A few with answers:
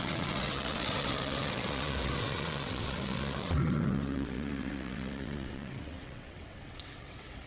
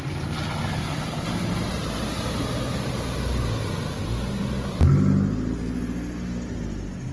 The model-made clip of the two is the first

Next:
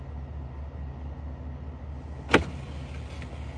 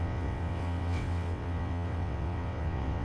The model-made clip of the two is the second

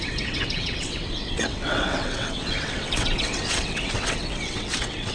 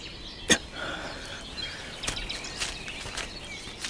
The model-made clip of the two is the first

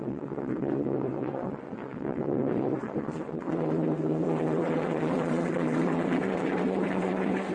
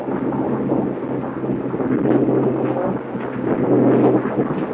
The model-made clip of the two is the first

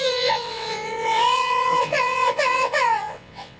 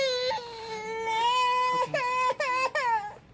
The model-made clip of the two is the first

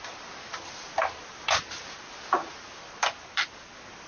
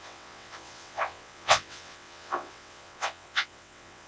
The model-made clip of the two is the second